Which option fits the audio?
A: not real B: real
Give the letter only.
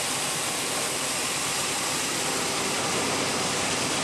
A